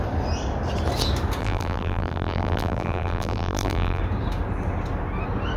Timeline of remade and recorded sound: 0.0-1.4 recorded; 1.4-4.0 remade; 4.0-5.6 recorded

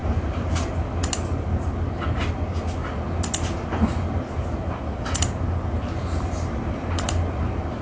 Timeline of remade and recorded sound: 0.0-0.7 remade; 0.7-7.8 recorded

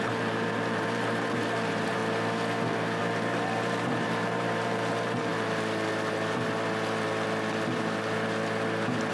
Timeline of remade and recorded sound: 0.0-2.0 remade; 2.0-3.0 recorded; 3.0-5.3 remade; 5.3-9.1 recorded

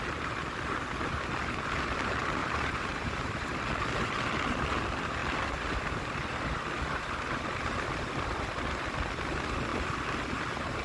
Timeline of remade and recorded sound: 0.0-2.4 recorded; 2.4-3.1 remade; 3.1-10.8 recorded